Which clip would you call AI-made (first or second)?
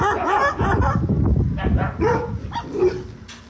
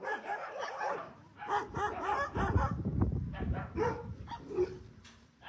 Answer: second